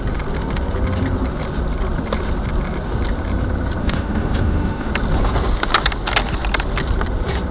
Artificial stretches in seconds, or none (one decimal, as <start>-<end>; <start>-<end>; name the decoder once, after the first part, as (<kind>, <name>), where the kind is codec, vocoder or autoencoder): 3.8-4.9 (autoencoder, DAC-VAE)